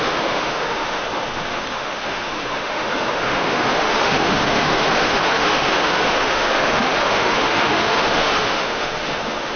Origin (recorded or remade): remade